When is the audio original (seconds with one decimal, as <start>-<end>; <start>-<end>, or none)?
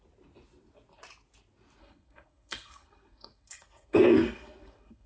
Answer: 0.0-1.8